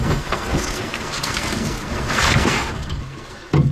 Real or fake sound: fake